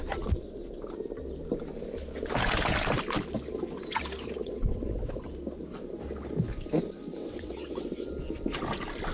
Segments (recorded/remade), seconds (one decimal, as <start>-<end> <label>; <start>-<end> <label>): 0.0-4.4 recorded; 4.4-5.2 remade; 5.2-7.2 recorded; 7.2-8.1 remade; 8.1-9.1 recorded

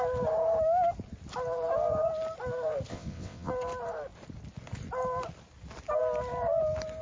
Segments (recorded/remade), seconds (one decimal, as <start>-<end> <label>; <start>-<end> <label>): 0.0-2.9 recorded; 2.9-3.5 remade; 3.5-7.0 recorded

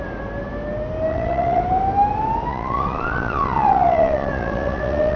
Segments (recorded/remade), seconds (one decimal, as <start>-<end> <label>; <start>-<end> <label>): 0.0-1.1 recorded; 1.1-1.6 remade; 1.6-2.5 recorded; 2.5-5.2 remade

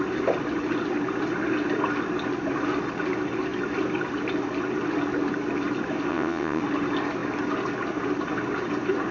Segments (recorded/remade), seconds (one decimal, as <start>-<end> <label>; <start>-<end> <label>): 0.0-6.1 recorded; 6.1-6.6 remade; 6.6-9.1 recorded

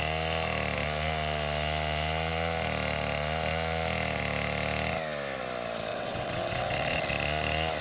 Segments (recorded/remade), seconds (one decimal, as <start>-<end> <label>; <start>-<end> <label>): 0.0-5.9 recorded; 5.9-7.1 remade; 7.1-7.8 recorded

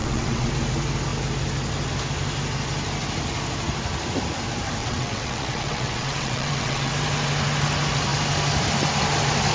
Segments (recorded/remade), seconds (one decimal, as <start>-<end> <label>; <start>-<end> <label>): 0.0-0.5 remade; 0.5-4.8 recorded; 4.8-6.9 remade; 6.9-9.5 recorded